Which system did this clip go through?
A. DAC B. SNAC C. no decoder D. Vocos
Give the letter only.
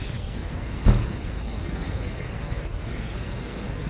B